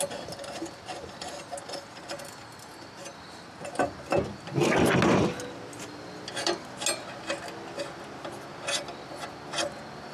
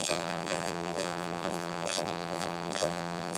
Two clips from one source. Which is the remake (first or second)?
second